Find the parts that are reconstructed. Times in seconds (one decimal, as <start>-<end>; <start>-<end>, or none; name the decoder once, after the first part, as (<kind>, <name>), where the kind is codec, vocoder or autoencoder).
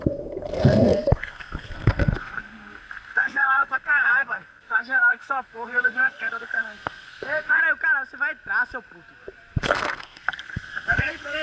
0.0-7.6 (codec, SNAC); 9.6-11.4